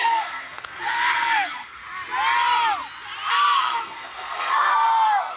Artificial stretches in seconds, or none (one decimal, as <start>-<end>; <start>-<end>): 0.0-1.8; 3.3-5.4

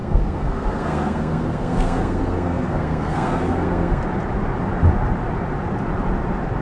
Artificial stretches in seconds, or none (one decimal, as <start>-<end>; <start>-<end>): 0.0-4.0

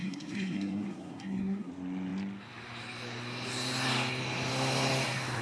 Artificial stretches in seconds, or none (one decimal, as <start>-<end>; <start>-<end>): 0.0-1.7

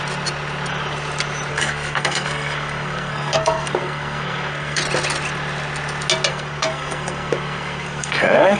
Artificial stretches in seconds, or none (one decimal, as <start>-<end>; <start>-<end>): 1.5-4.8; 6.3-8.6

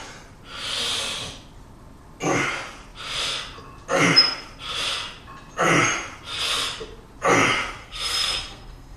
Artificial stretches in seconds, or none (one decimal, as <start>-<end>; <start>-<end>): 7.8-9.0